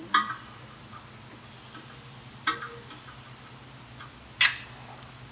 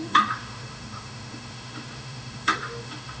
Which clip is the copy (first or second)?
second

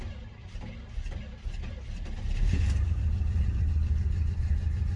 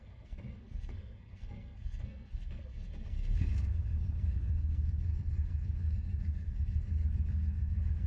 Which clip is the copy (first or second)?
second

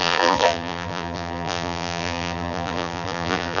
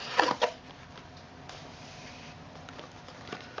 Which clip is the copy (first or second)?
first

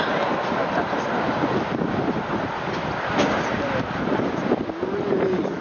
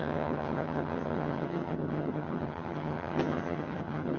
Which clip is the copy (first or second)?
second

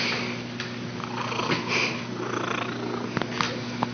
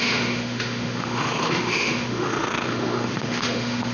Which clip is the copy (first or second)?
second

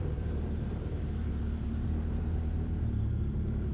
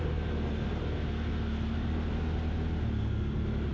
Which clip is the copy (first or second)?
first